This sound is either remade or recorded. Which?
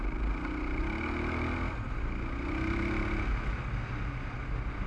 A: recorded